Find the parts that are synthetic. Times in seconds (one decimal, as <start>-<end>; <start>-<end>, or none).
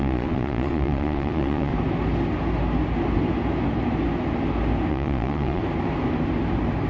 0.0-1.7; 4.9-5.6